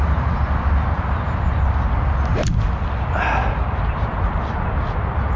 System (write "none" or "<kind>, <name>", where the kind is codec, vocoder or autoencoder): none